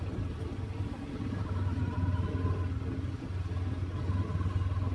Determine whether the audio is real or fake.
real